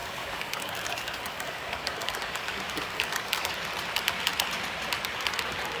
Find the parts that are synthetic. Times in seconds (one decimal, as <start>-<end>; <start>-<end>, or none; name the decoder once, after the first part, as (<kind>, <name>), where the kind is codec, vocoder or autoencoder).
0.0-3.5 (codec, DAC)